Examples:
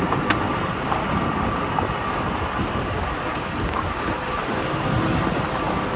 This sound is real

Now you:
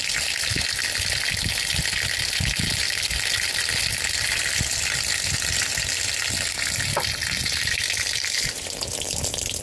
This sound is real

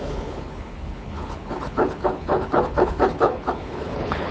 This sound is fake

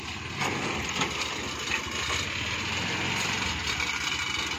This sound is real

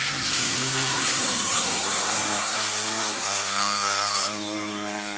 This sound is fake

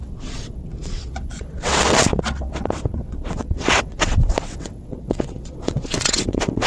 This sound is fake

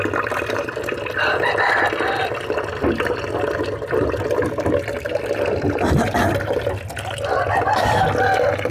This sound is real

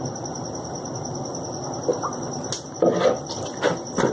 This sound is real